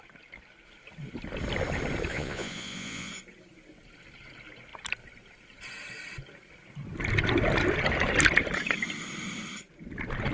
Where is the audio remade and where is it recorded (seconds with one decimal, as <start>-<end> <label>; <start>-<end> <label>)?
0.0-2.1 recorded; 2.1-3.1 remade; 3.1-10.3 recorded